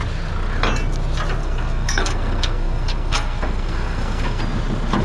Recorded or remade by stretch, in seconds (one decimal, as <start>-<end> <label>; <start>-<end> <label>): 0.0-1.4 recorded; 1.4-4.4 remade; 4.4-5.0 recorded